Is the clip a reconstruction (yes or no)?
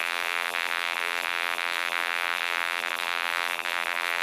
yes